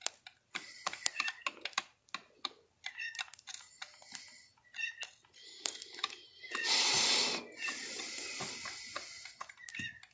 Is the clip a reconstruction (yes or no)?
no